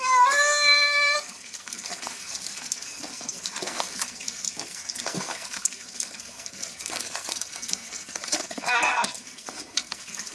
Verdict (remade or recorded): remade